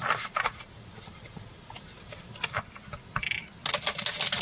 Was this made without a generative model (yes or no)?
yes